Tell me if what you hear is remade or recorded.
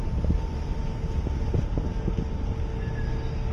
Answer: recorded